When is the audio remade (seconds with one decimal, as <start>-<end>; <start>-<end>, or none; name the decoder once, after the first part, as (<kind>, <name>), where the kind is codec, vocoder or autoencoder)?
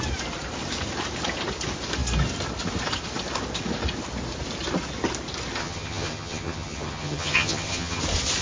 5.6-8.0 (vocoder, HiFi-GAN)